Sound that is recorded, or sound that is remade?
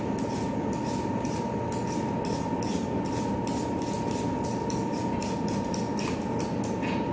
recorded